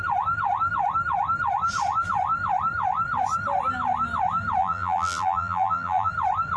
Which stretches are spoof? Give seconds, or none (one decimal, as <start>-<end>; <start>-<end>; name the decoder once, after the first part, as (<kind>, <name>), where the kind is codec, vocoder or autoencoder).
4.6-6.1 (vocoder, BigVGAN v2)